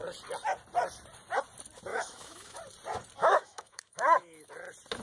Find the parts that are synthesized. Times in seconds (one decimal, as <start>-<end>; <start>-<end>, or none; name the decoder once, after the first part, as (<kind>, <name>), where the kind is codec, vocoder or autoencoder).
1.9-2.6 (autoencoder, DAC-VAE); 3.2-4.5